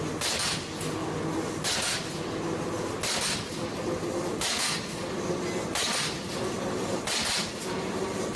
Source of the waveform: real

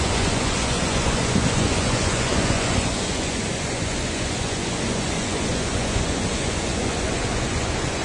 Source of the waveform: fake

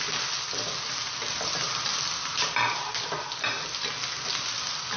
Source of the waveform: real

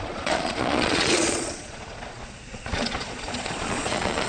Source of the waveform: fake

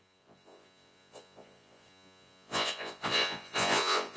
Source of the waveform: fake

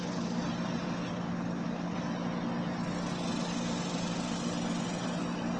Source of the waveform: real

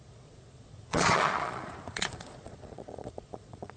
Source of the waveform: fake